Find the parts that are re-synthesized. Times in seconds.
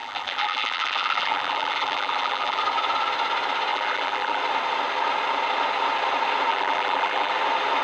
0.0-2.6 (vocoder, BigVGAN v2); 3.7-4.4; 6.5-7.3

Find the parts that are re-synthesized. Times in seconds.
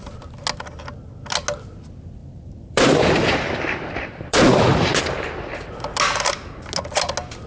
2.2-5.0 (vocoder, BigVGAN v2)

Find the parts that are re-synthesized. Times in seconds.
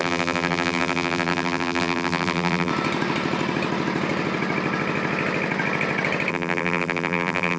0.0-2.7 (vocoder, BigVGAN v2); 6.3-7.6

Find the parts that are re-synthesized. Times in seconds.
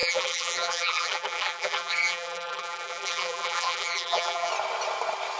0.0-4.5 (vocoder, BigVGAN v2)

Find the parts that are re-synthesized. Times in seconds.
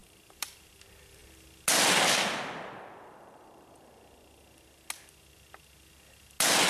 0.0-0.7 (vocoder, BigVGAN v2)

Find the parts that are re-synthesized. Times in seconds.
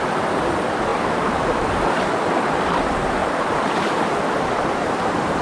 0.9-2.1 (vocoder, BigVGAN v2); 3.2-4.8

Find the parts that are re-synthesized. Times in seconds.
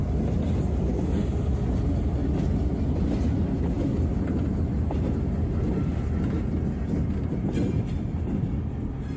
none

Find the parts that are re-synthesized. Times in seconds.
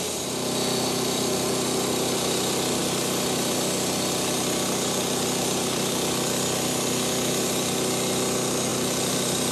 none